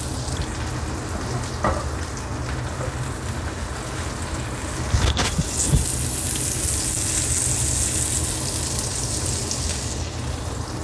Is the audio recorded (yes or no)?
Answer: yes